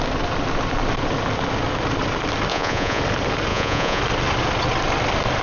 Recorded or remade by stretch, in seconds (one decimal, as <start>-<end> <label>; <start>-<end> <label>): 0.0-2.5 recorded; 2.5-3.0 remade; 3.0-3.5 recorded; 3.5-4.0 remade; 4.0-5.4 recorded

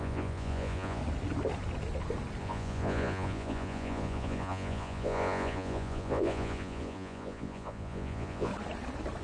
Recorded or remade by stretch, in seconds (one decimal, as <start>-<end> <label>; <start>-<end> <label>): 0.0-1.0 remade; 1.0-2.4 recorded; 2.4-8.5 remade; 8.5-9.2 recorded